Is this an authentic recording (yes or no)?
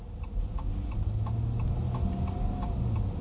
yes